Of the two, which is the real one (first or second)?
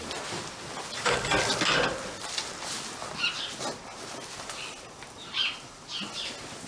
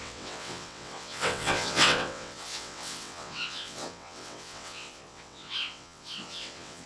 first